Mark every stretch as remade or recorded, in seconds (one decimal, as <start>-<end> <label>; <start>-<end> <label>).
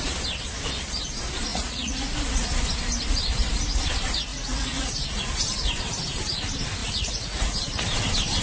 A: 0.0-1.5 recorded; 1.5-2.1 remade; 2.1-4.3 recorded; 4.3-4.9 remade; 4.9-6.8 recorded; 6.8-7.8 remade; 7.8-8.4 recorded